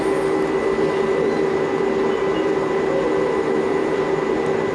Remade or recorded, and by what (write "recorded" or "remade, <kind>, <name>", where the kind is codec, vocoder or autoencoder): recorded